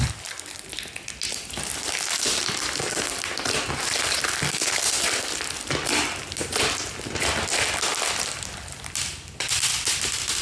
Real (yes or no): yes